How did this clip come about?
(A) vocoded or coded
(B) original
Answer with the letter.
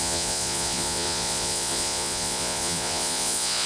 A